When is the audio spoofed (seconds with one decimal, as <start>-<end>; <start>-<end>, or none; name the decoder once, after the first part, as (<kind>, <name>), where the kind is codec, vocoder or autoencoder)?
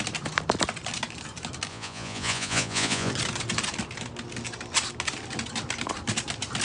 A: 1.7-3.1 (vocoder, Vocos)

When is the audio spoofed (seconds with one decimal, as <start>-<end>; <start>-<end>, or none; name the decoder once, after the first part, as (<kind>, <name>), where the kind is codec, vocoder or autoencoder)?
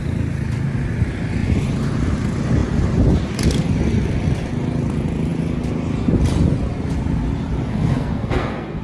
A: 7.7-8.8 (codec, SNAC)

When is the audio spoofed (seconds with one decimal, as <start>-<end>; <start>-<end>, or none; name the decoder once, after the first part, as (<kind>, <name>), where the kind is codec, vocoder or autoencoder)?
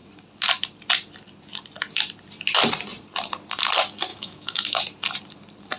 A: 4.1-4.8 (autoencoder, DAC-VAE)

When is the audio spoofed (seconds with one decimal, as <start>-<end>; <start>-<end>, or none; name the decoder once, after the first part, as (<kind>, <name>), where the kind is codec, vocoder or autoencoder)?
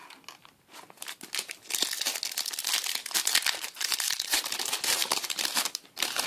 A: 1.7-2.1 (vocoder, BigVGAN v2); 3.6-6.3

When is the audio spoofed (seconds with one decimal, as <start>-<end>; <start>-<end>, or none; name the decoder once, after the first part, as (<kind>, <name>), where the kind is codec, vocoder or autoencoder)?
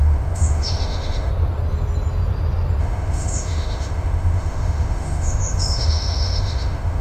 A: 0.0-1.3 (autoencoder, DAC-VAE); 2.8-7.0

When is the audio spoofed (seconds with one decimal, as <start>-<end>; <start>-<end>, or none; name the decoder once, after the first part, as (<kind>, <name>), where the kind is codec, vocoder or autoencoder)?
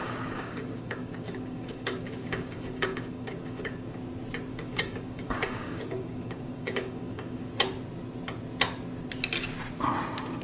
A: 0.0-4.0 (codec, DAC); 4.5-7.5